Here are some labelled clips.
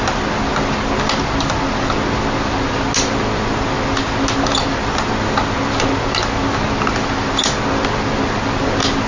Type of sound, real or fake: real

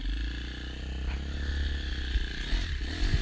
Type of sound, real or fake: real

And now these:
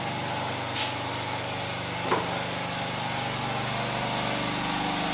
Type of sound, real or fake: real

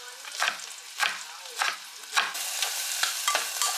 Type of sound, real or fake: real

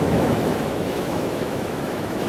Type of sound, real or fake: fake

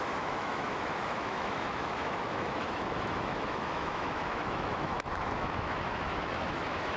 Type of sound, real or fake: fake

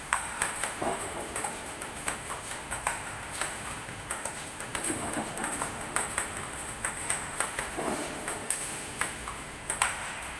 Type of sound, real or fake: fake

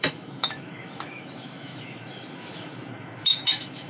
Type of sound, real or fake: fake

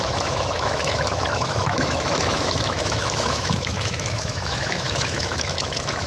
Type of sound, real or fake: fake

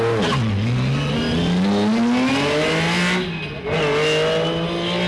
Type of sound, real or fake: real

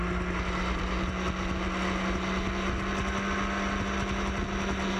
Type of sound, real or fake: real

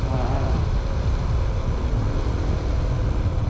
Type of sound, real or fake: real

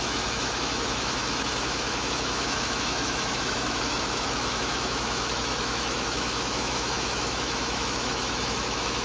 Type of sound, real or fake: fake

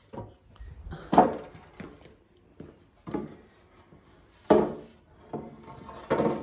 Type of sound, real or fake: real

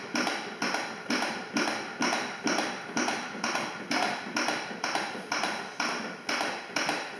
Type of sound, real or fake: real